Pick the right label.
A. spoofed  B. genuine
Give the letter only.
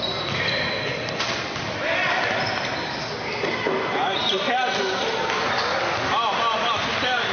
B